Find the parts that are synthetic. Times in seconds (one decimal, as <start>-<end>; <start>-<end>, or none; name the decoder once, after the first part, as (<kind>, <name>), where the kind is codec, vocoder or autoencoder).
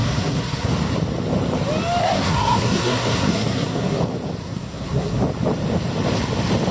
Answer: 0.0-0.7 (codec, SNAC); 2.0-4.0; 4.4-5.2